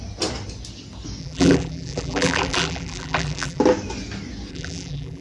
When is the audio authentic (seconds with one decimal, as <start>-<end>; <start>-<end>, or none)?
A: 0.0-1.2; 3.6-4.5